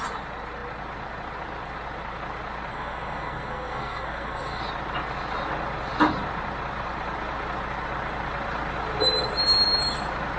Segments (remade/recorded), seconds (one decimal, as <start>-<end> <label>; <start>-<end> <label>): 0.0-2.7 recorded; 2.7-4.6 remade; 4.6-10.4 recorded

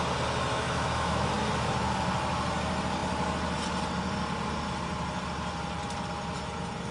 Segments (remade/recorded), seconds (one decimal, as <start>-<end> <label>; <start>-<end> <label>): 0.0-0.5 recorded; 0.5-1.3 remade; 1.3-6.9 recorded

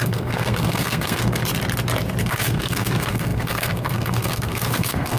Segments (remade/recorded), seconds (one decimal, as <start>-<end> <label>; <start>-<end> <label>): 0.0-1.4 remade; 1.4-2.2 recorded; 2.2-5.2 remade

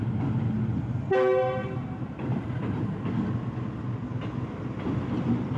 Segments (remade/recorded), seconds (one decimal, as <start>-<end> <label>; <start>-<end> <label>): 0.0-1.6 recorded; 1.6-3.1 remade; 3.1-5.6 recorded

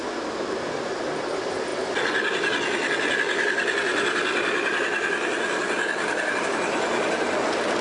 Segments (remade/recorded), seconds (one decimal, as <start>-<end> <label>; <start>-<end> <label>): 0.0-7.8 recorded

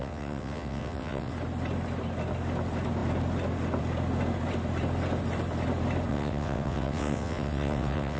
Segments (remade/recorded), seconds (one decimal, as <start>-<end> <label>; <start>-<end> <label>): 0.0-1.3 remade; 1.3-6.1 recorded; 6.1-8.2 remade